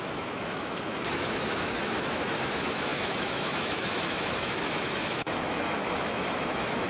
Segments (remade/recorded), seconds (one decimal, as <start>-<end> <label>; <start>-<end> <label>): 0.0-6.9 remade